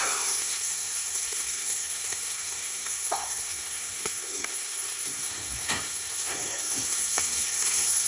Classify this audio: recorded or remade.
remade